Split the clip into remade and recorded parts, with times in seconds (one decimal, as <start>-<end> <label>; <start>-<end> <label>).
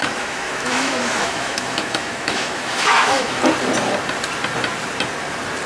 0.0-3.4 remade; 3.4-5.7 recorded